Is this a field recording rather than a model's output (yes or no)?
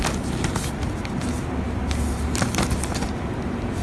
yes